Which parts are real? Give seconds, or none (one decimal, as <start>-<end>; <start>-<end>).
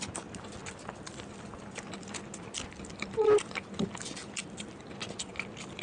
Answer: 0.0-5.8